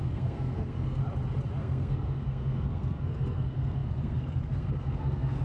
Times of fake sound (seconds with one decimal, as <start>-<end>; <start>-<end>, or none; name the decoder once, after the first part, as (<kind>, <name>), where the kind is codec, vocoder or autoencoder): 0.0-1.0 (codec, SNAC); 1.6-5.4